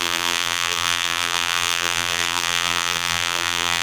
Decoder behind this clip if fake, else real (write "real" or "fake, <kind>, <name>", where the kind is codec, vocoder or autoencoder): fake, vocoder, BigVGAN v2